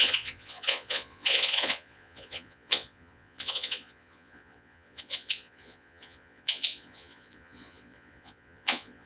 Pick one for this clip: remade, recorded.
remade